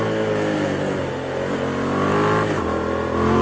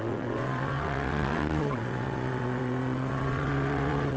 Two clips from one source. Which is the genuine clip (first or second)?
first